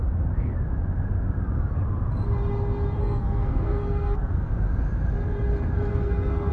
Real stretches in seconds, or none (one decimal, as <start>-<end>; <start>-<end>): 0.0-3.0; 4.5-5.9